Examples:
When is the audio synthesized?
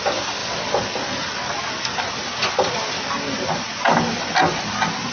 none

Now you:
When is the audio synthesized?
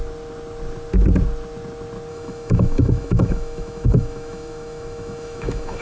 2.1-5.8 (autoencoder, DAC-VAE)